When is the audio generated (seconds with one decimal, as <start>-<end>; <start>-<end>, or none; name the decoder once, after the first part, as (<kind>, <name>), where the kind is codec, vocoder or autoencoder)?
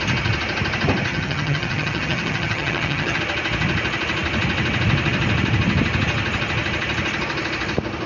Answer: 1.1-3.2 (vocoder, HiFi-GAN)